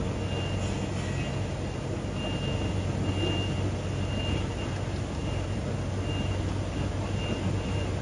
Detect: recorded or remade recorded